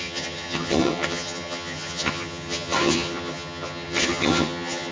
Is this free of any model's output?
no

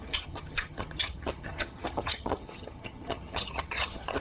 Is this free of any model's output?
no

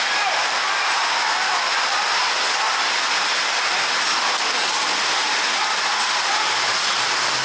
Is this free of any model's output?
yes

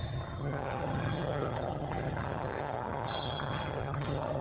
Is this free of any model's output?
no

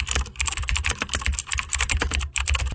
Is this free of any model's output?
yes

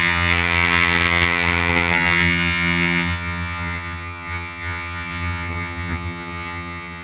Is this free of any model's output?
no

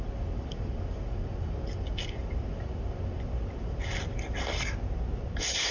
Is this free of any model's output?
yes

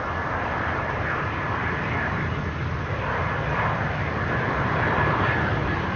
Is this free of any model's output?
yes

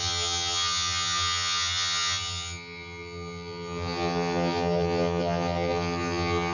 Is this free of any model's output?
no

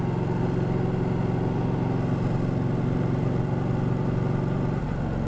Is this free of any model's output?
yes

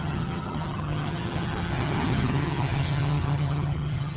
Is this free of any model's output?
no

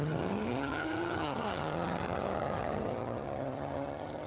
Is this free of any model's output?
no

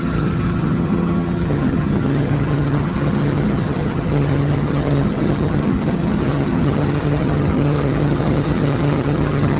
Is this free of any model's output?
no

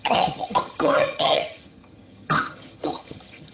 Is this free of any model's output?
no